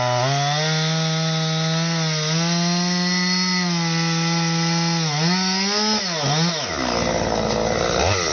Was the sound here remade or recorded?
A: recorded